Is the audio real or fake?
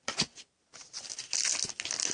real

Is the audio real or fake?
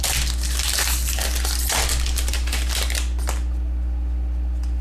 real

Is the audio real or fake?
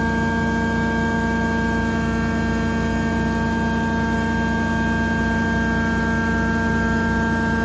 real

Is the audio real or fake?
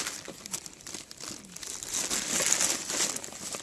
real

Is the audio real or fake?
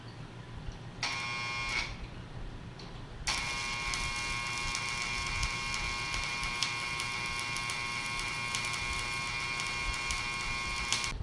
real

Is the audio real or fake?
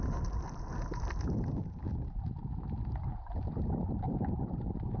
real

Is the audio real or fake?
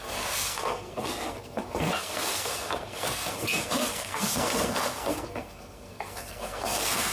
fake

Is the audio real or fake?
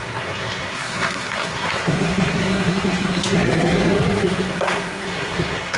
fake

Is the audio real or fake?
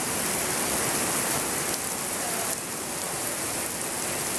real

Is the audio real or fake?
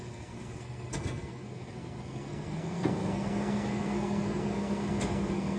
fake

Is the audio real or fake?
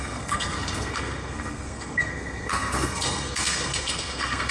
fake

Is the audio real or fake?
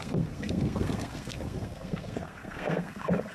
fake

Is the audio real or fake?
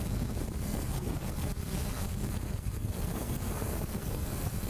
fake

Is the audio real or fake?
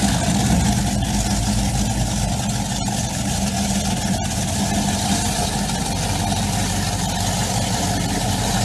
real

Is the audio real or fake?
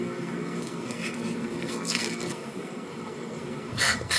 fake